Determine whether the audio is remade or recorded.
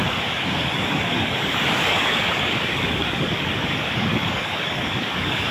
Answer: remade